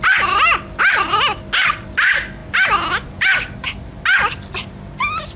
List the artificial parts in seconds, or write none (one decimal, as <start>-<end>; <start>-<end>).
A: none